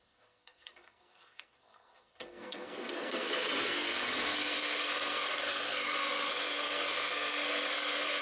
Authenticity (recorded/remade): remade